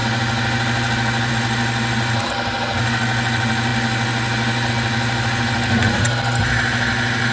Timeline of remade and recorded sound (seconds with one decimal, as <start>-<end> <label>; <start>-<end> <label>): 0.0-7.3 recorded